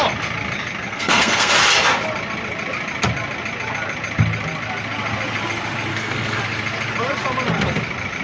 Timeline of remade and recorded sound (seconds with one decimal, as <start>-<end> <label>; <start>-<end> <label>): 0.0-0.9 recorded; 0.9-1.5 remade; 1.5-5.9 recorded; 5.9-6.4 remade; 6.4-8.2 recorded